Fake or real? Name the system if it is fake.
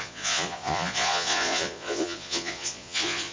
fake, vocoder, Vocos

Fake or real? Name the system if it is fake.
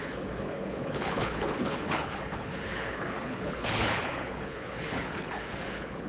fake, codec, HILCodec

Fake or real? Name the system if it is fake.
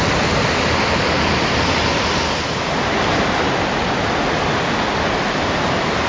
real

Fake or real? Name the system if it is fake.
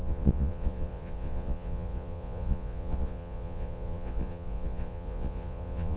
fake, vocoder, Vocos